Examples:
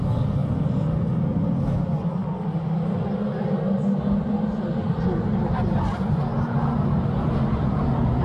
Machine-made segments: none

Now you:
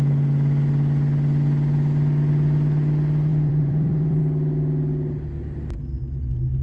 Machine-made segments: 3.3-4.2 (vocoder, BigVGAN v2)

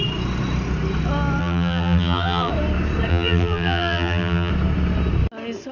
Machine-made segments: 1.4-2.5 (vocoder, BigVGAN v2); 3.1-4.5